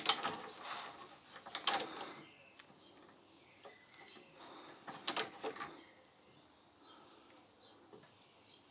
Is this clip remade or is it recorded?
recorded